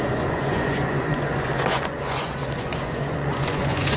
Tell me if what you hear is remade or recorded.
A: remade